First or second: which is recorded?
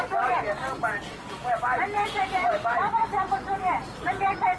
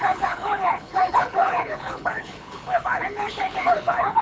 first